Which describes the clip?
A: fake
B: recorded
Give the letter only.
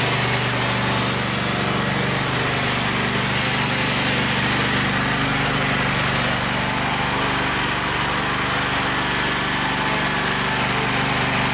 B